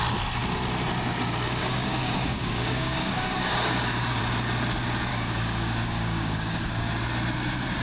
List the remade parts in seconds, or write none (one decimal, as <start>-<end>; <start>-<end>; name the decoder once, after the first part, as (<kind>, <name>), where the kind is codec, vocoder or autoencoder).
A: 1.6-4.2 (codec, DAC); 5.1-6.7

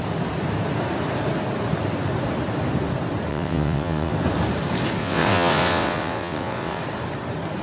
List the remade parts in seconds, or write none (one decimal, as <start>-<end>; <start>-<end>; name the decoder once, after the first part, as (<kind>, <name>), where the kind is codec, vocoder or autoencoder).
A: 3.3-4.1 (vocoder, WaveNeXt); 5.0-6.8

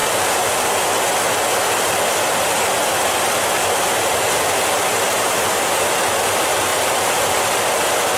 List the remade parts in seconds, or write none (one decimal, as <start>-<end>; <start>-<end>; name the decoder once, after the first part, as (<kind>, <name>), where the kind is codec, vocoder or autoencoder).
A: 4.9-5.7 (vocoder, BigVGAN v2); 6.7-7.4

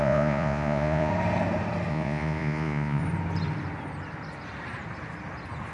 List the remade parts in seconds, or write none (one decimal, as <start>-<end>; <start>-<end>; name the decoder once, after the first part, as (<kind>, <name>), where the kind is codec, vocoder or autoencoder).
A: 0.0-1.1 (vocoder, Vocos); 1.9-3.0